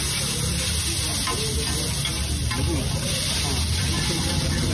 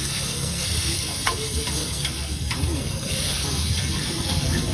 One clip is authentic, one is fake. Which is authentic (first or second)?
first